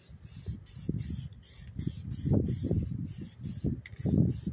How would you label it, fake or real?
real